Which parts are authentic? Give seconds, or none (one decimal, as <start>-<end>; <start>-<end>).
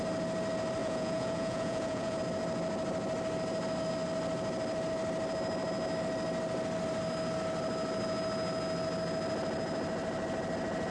0.0-0.8; 2.2-10.9